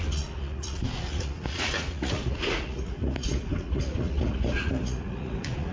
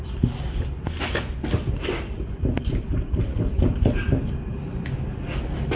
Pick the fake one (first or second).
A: first